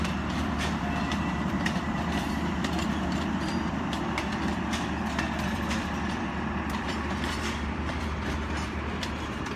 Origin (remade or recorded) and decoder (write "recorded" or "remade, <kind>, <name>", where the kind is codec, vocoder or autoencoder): remade, vocoder, BigVGAN v2